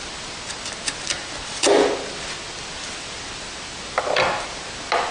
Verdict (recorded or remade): recorded